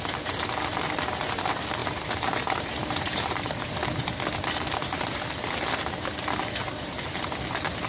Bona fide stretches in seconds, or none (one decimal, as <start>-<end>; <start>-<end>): 0.0-1.8; 3.8-7.9